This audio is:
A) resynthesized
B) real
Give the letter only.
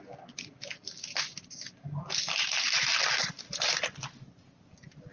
B